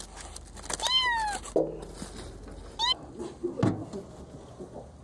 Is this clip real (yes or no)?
yes